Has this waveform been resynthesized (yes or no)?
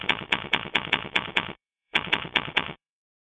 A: yes